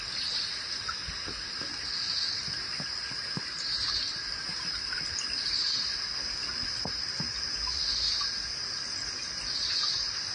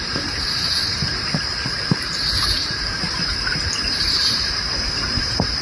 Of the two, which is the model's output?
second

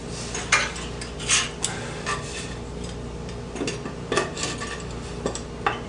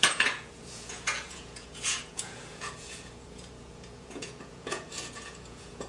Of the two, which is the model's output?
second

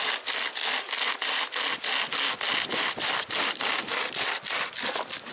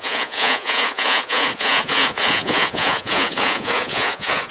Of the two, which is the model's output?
second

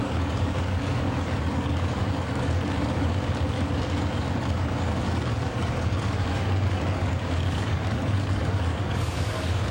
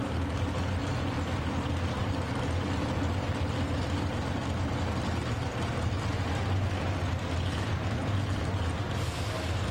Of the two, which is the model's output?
first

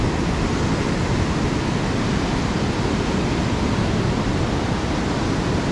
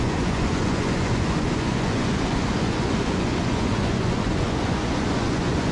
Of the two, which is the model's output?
second